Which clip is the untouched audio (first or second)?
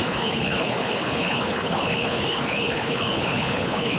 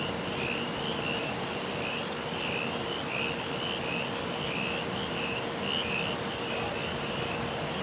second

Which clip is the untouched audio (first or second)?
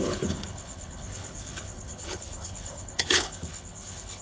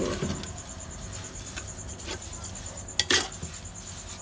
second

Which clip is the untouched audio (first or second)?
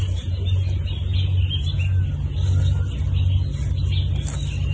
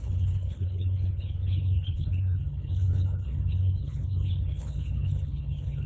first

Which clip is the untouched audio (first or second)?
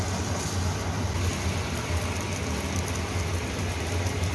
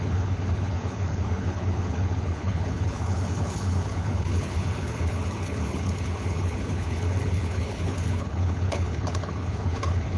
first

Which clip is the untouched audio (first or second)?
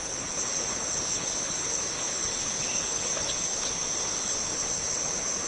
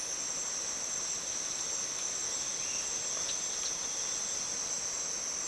second